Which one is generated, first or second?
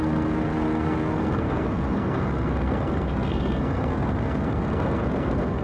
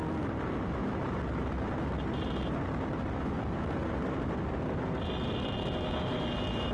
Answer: first